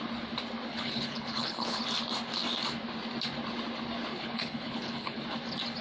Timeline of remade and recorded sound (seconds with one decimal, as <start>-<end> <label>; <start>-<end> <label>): 0.0-0.7 recorded; 0.7-1.8 remade; 1.8-4.1 recorded; 4.1-5.2 remade; 5.2-5.8 recorded